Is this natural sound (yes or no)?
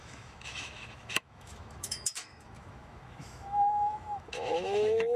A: no